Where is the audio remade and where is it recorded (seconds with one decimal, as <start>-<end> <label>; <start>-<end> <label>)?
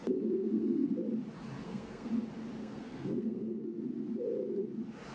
0.0-0.9 remade; 0.9-1.6 recorded; 1.6-2.1 remade; 2.1-2.6 recorded; 2.6-3.8 remade; 3.8-5.1 recorded